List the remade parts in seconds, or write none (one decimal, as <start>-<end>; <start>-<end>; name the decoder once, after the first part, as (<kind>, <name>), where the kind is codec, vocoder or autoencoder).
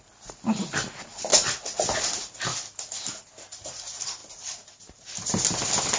none